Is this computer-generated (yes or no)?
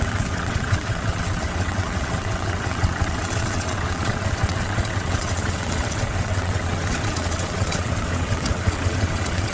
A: yes